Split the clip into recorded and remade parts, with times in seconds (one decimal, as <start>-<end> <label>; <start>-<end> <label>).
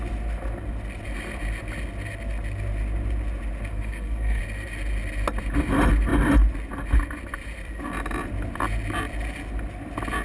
0.0-3.7 recorded; 3.7-4.4 remade; 4.4-10.2 recorded